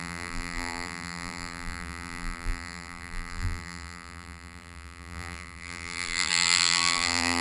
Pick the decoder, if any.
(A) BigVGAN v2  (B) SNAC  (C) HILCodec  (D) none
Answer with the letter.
A